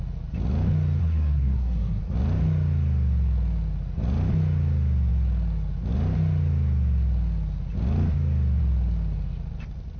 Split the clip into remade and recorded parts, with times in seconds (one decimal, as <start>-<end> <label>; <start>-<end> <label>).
0.0-1.0 recorded; 1.0-2.0 remade; 2.0-10.0 recorded